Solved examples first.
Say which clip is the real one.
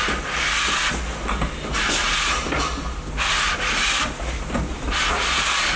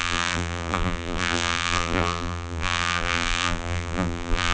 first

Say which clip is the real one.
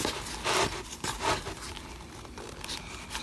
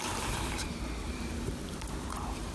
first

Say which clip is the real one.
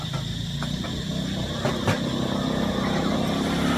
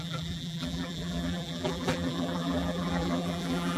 first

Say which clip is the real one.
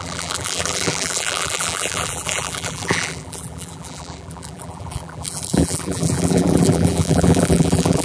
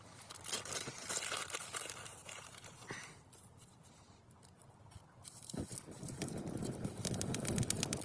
second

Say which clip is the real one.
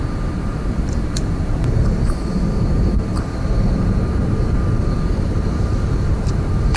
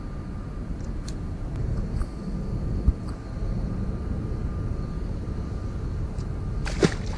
second